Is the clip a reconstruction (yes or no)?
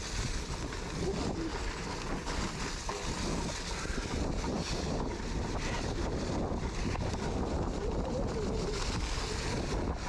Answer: no